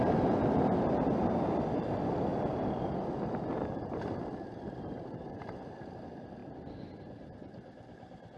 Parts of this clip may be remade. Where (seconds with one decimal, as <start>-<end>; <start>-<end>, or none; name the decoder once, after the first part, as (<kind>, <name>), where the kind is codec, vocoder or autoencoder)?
none